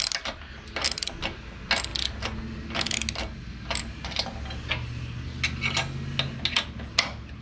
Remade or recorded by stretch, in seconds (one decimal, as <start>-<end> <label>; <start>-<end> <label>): 0.0-7.4 recorded